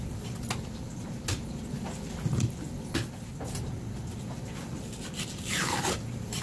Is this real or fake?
real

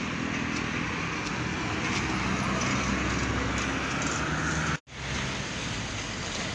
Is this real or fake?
real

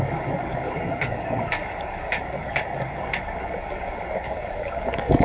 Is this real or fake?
fake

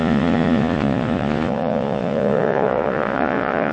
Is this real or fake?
fake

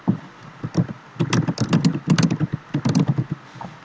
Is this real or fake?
real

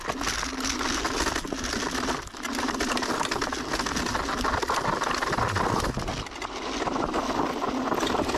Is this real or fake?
real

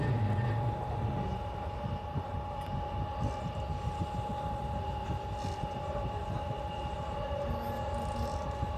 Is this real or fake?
real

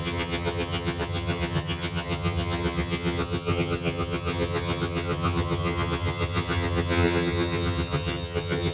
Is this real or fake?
fake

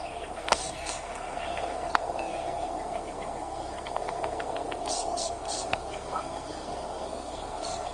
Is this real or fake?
fake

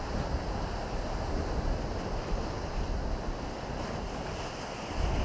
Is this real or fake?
real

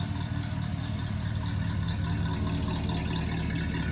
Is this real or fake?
real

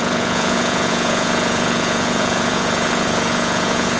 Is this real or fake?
fake